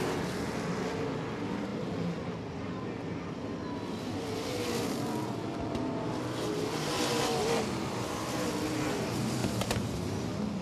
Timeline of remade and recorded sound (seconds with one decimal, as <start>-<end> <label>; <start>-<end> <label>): 0.0-10.6 recorded